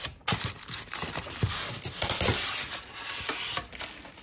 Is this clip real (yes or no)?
yes